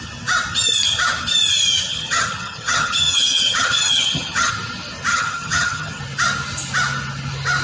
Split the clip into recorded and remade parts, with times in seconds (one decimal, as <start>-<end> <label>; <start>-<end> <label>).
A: 0.0-1.9 recorded; 1.9-4.5 remade; 4.5-5.1 recorded; 5.1-6.0 remade; 6.0-7.6 recorded